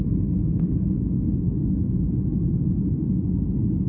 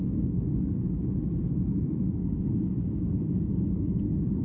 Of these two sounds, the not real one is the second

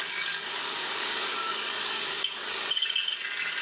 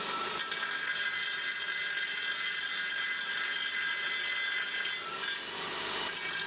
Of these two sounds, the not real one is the first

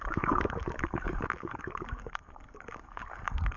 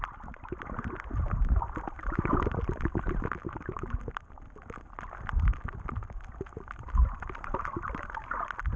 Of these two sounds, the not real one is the first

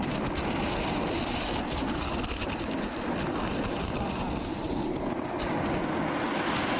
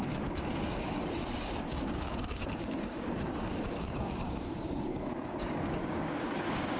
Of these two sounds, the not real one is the second